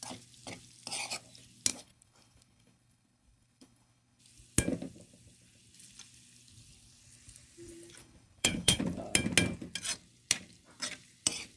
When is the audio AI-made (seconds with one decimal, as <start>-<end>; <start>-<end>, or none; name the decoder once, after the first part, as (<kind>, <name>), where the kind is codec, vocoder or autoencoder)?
1.7-4.2 (codec, HILCodec); 8.0-8.8